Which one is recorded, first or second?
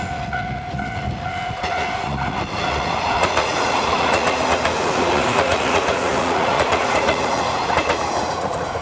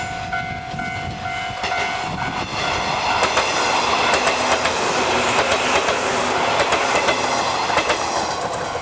second